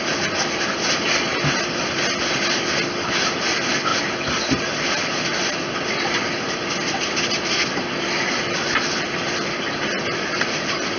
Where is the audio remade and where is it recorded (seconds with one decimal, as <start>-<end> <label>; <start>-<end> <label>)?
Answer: 0.0-11.0 recorded